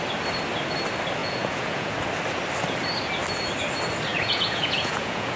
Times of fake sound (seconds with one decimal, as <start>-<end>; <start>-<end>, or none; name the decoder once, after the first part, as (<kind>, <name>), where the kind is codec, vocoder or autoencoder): 1.2-1.9 (vocoder, Vocos); 4.1-5.4